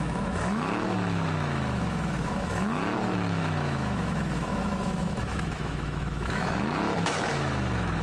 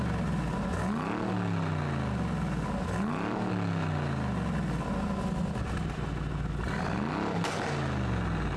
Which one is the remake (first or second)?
first